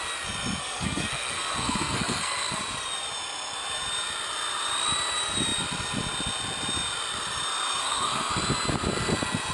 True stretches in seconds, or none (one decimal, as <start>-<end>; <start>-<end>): 0.0-0.6; 2.6-7.8; 8.3-9.5